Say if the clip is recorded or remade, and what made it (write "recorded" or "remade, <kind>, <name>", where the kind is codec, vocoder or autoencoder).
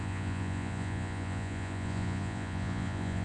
remade, vocoder, Vocos